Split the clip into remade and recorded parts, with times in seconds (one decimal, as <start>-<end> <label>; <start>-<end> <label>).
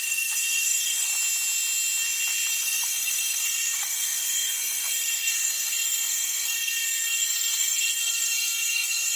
0.0-1.1 remade; 1.1-2.6 recorded; 2.6-9.2 remade